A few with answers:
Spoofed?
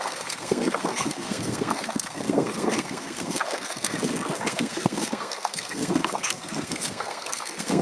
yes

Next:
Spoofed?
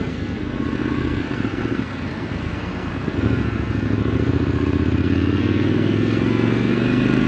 yes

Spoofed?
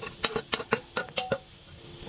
no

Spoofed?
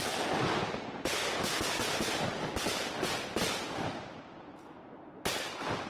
no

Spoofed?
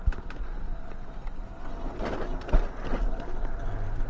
no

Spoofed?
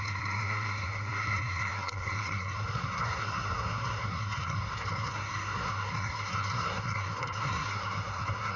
yes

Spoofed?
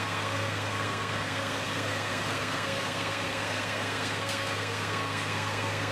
yes